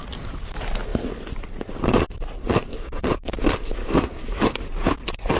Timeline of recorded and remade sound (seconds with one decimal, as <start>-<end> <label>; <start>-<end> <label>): 0.0-2.7 recorded; 2.7-3.4 remade; 3.4-3.8 recorded; 3.8-4.6 remade; 4.6-5.4 recorded